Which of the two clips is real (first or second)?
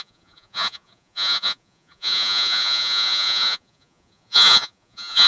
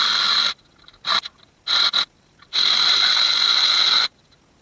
second